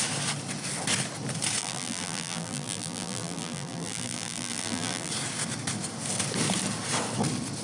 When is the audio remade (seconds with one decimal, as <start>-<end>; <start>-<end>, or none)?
1.6-5.1